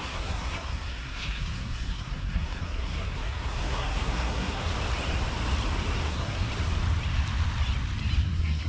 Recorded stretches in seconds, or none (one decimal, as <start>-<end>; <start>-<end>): 4.7-6.0; 6.5-8.2